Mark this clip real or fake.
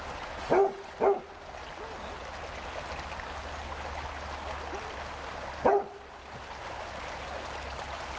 real